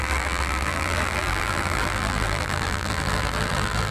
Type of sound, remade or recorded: remade